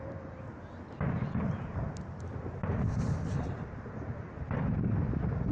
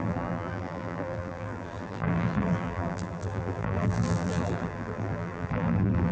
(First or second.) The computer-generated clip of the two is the second